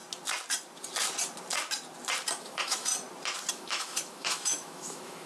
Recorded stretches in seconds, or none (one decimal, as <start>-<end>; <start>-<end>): 0.0-2.4; 2.9-3.5